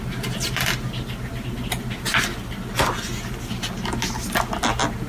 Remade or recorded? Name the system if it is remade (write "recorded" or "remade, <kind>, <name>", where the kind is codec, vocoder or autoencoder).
recorded